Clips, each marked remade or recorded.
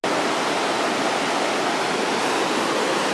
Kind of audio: recorded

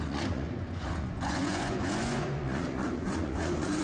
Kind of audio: remade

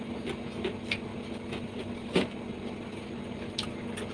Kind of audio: recorded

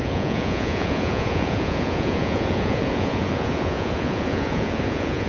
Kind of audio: remade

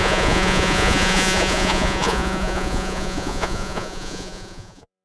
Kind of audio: remade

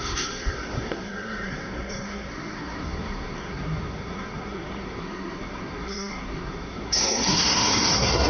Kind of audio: remade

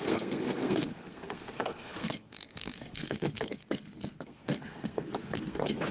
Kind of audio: remade